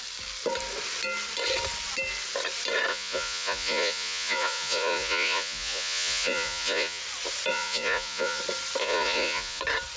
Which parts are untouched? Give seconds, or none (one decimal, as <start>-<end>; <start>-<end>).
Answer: 0.0-2.9; 7.0-7.5; 8.4-8.8; 9.6-10.0